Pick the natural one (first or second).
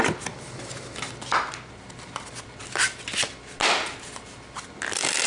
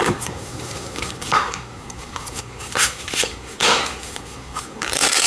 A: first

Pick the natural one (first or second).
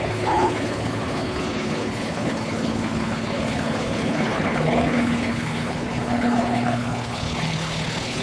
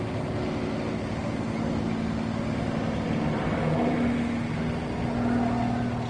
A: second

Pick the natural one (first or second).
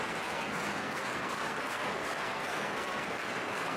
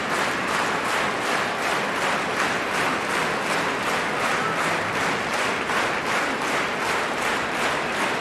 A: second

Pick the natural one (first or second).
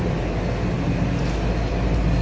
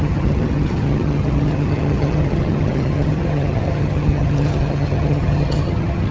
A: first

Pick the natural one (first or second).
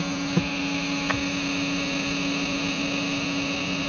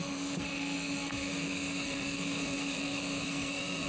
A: first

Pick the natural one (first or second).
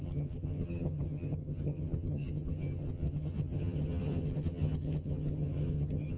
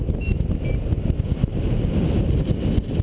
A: second